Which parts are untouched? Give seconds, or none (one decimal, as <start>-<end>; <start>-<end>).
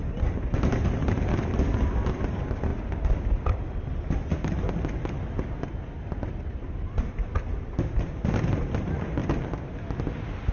0.0-10.5